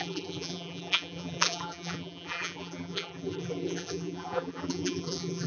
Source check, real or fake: fake